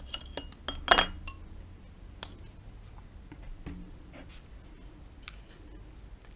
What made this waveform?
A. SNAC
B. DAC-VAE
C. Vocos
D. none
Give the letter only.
D